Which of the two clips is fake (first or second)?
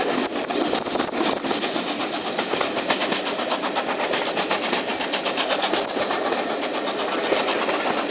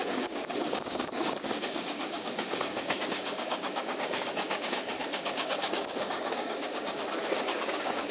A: second